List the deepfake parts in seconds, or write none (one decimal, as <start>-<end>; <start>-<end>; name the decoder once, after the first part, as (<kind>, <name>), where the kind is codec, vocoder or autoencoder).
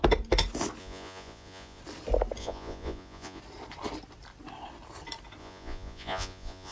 0.8-1.8 (vocoder, Vocos); 2.4-3.4; 5.4-6.7